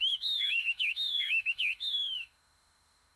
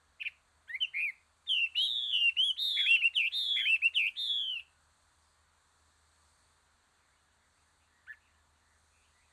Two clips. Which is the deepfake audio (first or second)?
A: first